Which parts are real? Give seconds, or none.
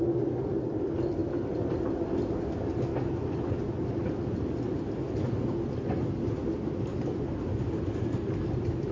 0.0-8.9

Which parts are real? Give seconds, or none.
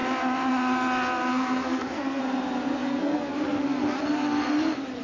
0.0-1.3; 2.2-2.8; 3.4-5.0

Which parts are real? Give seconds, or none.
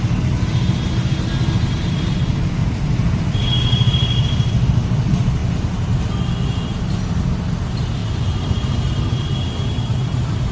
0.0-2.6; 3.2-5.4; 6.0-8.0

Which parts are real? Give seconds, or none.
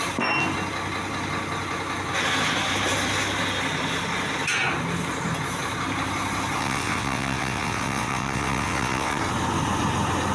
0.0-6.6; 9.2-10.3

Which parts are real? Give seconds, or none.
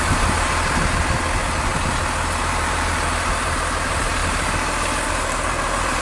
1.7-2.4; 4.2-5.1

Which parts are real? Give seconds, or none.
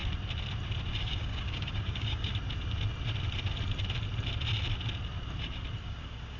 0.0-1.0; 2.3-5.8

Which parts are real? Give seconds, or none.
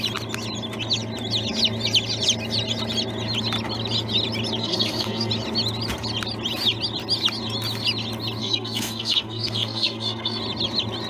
0.0-4.6; 5.3-8.4; 10.4-11.1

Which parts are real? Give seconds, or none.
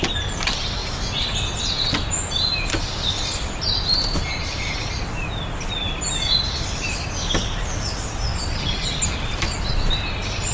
0.0-10.5